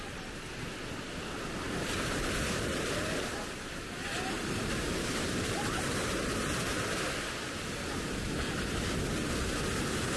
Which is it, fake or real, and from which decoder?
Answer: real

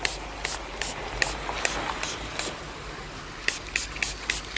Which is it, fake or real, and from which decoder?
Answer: real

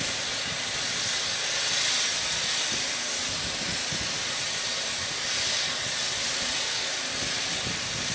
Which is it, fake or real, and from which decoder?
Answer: real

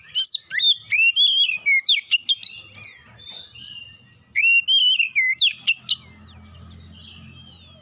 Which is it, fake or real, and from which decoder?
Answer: real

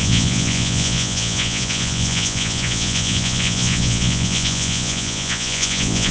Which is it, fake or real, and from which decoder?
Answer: fake, vocoder, Vocos